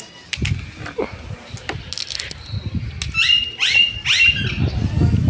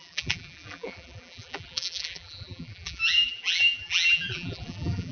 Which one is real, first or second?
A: first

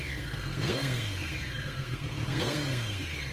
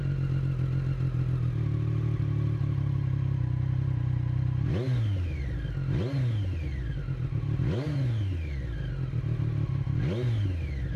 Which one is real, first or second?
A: second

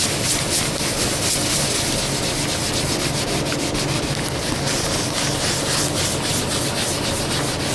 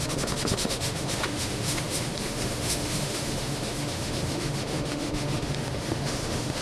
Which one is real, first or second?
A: first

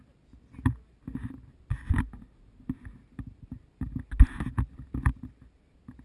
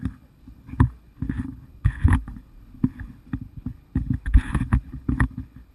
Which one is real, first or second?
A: first